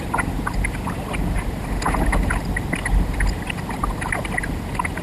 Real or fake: real